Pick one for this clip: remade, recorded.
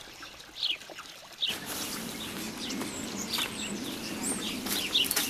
recorded